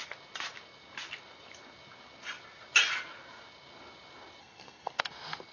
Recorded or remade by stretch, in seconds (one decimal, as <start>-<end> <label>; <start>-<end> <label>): 0.0-4.4 recorded; 4.4-5.0 remade; 5.0-5.5 recorded